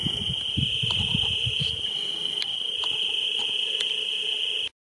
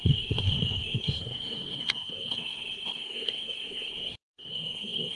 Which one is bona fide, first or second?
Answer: first